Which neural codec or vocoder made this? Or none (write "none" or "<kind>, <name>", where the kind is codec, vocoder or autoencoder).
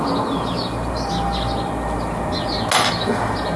none